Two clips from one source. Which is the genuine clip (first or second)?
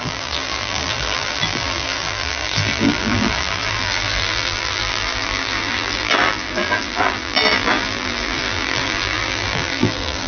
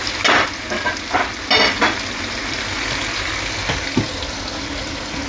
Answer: second